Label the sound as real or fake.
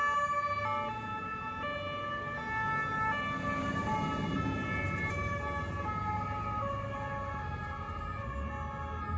real